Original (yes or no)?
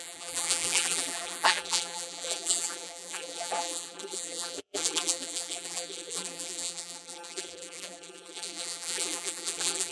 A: no